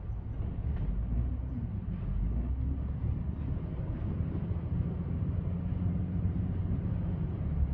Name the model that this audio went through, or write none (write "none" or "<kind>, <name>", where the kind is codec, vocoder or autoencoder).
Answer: none